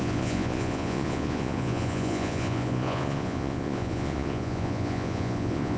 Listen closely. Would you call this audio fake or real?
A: fake